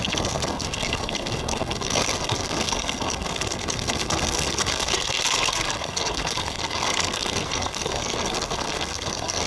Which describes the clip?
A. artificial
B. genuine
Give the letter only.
A